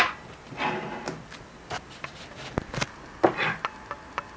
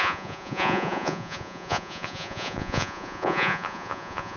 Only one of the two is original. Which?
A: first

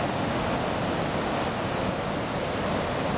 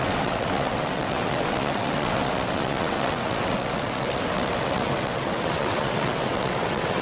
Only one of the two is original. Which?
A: first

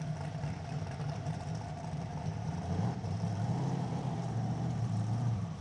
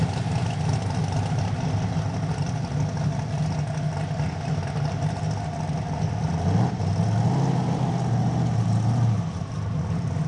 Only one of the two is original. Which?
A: second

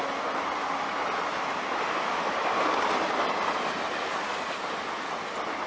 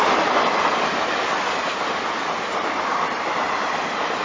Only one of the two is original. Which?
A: first